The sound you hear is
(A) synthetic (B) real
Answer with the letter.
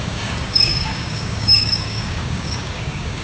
A